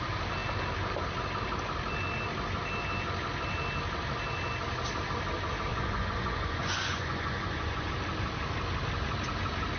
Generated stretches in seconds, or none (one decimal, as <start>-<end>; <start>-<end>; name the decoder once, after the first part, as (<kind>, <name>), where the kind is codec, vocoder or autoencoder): 5.7-7.9 (vocoder, Vocos)